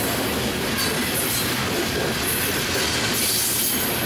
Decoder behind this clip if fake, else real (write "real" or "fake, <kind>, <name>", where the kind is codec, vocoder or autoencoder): real